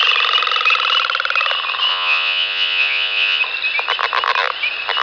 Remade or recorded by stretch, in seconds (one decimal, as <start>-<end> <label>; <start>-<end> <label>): 0.0-1.9 recorded; 1.9-3.4 remade; 3.4-5.0 recorded